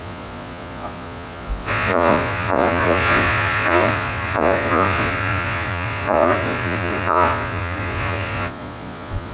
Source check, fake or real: fake